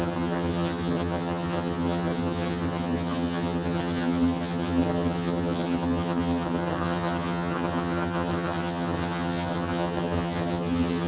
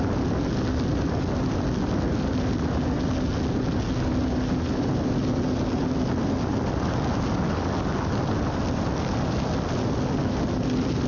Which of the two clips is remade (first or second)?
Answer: first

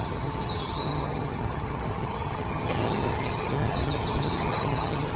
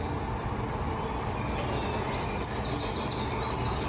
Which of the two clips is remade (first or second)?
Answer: first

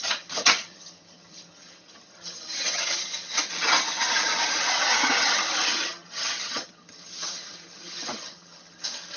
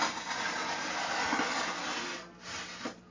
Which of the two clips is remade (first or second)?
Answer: first